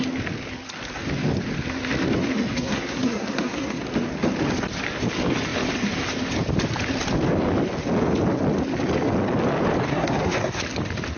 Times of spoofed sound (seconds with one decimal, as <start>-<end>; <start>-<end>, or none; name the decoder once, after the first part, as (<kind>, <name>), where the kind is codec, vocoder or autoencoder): 2.5-3.8 (codec, SNAC); 9.9-10.6